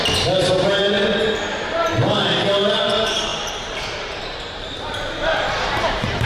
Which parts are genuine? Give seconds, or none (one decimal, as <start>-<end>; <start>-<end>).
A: 0.8-1.5